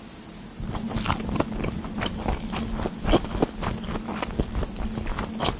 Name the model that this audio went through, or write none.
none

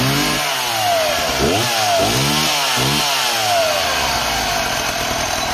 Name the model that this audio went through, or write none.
none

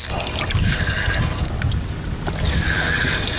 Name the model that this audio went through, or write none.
none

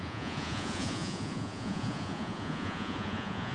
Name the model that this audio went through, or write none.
vocoder, Vocos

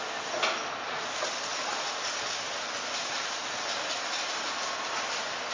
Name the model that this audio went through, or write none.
none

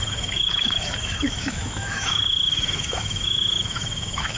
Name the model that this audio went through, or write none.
autoencoder, DAC-VAE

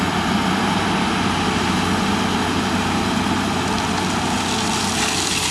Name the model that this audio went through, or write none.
none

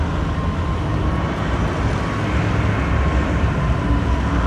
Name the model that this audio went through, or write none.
none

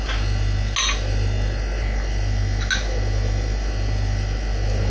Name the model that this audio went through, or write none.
none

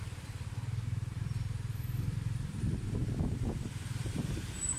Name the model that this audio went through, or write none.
vocoder, BigVGAN v2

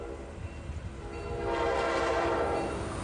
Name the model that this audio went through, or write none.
none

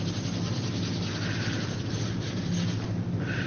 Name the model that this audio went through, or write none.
none